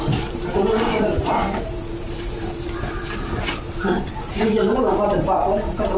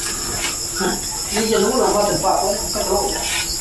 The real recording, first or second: second